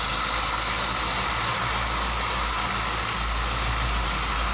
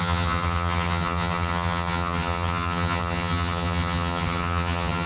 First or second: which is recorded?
first